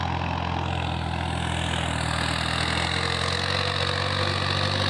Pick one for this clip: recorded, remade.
recorded